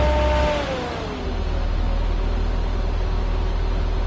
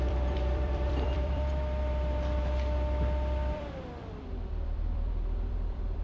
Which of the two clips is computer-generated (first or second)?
second